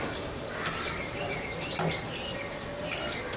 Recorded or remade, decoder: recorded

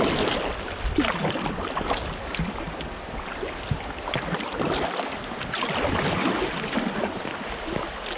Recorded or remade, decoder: recorded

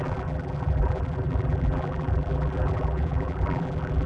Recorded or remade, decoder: remade, vocoder, BigVGAN v2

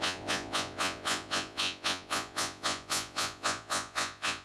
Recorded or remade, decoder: remade, vocoder, Vocos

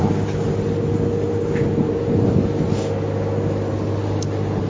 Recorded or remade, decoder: recorded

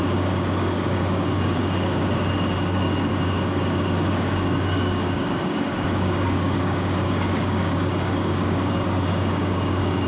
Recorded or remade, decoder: remade, codec, DAC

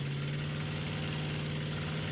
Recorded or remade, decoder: recorded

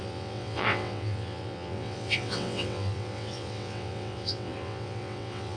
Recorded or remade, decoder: remade, vocoder, WaveNeXt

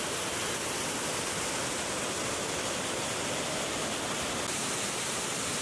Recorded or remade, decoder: recorded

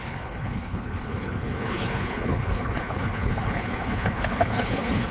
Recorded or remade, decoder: remade, codec, HILCodec